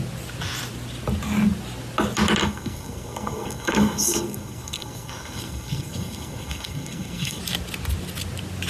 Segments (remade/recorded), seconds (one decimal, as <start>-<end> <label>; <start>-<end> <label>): 0.0-2.4 recorded; 2.4-7.4 remade; 7.4-8.7 recorded